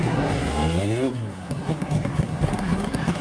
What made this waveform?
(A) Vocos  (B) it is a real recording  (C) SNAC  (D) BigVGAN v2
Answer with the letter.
C